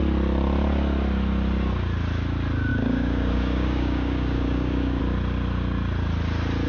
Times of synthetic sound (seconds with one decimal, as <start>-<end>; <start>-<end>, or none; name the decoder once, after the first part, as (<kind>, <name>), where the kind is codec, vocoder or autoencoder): 2.7-5.0 (codec, DAC)